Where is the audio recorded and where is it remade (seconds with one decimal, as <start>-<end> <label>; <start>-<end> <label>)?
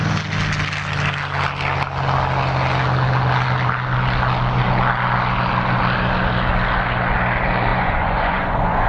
0.0-7.7 recorded; 7.7-8.9 remade